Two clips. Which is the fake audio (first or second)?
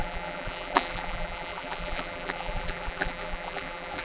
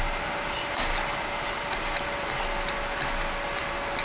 first